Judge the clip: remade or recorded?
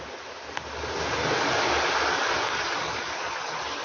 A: recorded